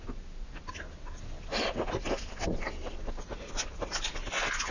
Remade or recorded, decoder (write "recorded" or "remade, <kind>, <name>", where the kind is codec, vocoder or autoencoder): recorded